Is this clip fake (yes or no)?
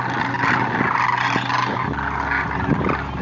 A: no